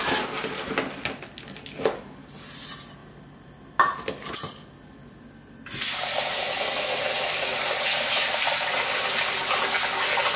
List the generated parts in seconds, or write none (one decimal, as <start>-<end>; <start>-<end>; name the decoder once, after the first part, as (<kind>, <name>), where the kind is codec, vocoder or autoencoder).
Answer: none